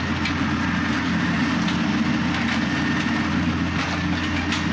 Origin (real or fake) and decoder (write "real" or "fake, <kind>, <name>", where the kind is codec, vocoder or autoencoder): real